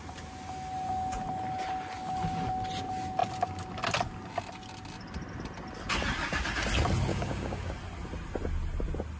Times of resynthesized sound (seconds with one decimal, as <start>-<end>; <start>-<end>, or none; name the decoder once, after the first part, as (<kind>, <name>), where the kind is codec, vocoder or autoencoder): 7.1-7.7 (codec, DAC)